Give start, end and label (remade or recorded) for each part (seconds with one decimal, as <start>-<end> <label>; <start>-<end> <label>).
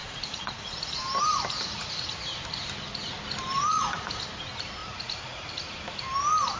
0.0-1.0 remade; 1.0-3.7 recorded; 3.7-4.2 remade; 4.2-4.8 recorded; 4.8-5.5 remade; 5.5-6.6 recorded